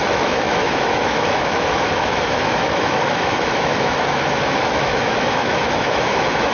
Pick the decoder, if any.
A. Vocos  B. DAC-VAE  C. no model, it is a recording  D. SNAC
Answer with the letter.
B